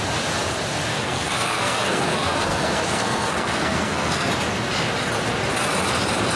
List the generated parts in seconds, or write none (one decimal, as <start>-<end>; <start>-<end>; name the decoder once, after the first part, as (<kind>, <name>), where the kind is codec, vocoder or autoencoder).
0.9-4.3 (codec, SNAC)